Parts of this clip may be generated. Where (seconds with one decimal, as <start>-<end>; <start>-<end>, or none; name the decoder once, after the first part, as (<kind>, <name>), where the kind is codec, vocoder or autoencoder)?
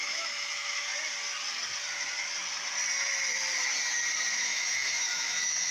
0.0-0.9 (autoencoder, DAC-VAE); 4.3-5.7